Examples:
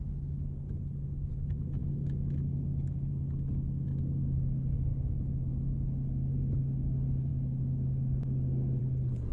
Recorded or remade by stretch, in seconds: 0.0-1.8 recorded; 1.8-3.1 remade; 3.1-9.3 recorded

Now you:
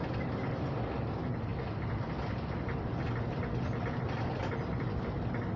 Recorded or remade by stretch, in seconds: 0.0-5.6 recorded

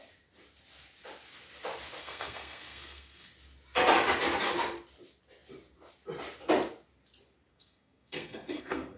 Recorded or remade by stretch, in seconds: 0.0-2.0 recorded; 2.0-3.3 remade; 3.3-7.5 recorded; 7.5-9.0 remade

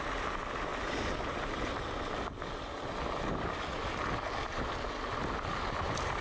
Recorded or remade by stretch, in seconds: 0.0-6.2 recorded

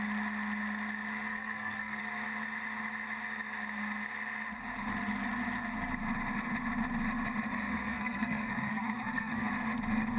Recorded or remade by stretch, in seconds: 0.0-1.3 recorded; 1.3-2.0 remade; 2.0-7.7 recorded; 7.7-9.5 remade; 9.5-10.2 recorded

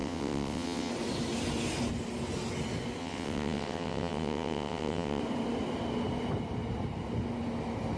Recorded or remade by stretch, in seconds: 0.0-0.9 remade; 0.9-3.0 recorded; 3.0-5.2 remade; 5.2-8.0 recorded

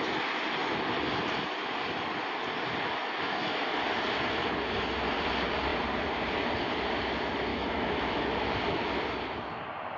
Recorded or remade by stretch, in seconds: 0.0-3.0 recorded; 3.0-3.8 remade; 3.8-7.5 recorded; 7.5-8.6 remade; 8.6-10.0 recorded

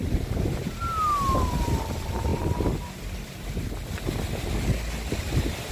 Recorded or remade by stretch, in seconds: 0.0-5.7 recorded